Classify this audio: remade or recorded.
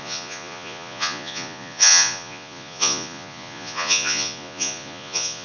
remade